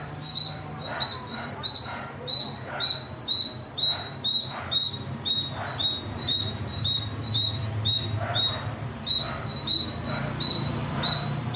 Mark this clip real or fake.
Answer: fake